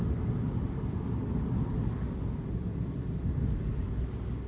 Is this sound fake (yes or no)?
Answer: no